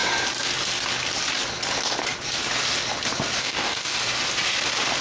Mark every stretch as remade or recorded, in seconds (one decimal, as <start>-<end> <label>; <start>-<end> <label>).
0.0-3.4 recorded; 3.4-4.0 remade; 4.0-5.0 recorded